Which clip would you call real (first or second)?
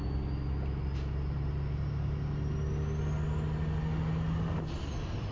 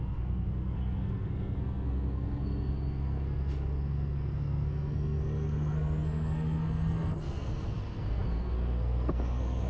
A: first